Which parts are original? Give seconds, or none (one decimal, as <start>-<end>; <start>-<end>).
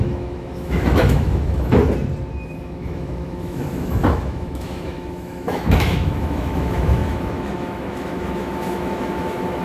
1.8-2.6